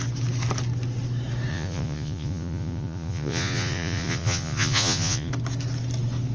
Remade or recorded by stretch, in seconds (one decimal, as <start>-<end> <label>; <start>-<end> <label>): 0.0-1.5 recorded; 1.5-5.3 remade; 5.3-6.3 recorded